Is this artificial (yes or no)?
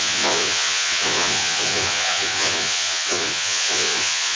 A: yes